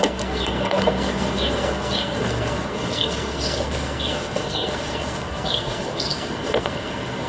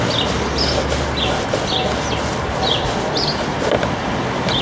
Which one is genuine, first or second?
second